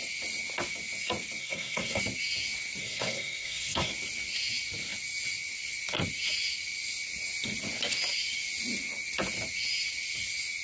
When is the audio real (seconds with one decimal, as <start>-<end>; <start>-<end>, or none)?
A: 0.0-1.4; 2.0-2.8; 3.9-10.6